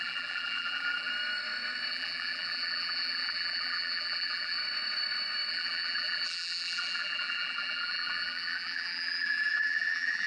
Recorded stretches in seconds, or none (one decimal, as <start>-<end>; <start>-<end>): 1.1-1.9; 4.6-5.5